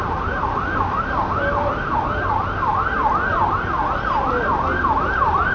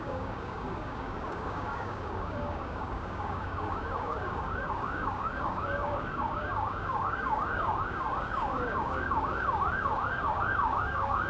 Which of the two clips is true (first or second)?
first